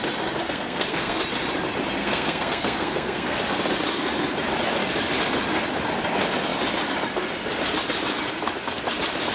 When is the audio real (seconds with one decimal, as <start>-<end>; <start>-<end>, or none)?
0.0-0.4; 1.2-2.0; 3.4-9.3